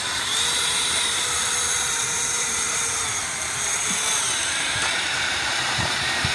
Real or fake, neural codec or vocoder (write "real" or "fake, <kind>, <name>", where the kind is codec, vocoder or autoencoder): fake, vocoder, BigVGAN v2